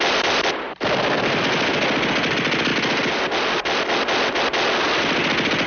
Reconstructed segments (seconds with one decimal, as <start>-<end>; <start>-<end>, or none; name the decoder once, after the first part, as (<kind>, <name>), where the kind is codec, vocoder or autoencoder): none